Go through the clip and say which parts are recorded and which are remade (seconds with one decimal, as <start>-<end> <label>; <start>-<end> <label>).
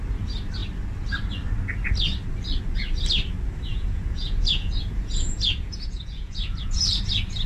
0.0-3.7 recorded; 3.7-6.8 remade; 6.8-7.5 recorded